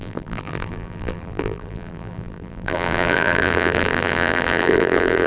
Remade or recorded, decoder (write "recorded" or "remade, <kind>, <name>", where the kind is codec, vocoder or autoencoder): remade, vocoder, BigVGAN v2